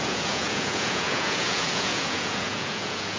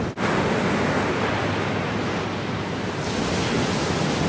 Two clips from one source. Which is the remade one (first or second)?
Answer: first